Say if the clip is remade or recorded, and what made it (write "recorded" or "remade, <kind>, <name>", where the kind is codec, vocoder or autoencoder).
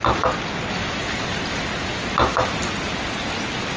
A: recorded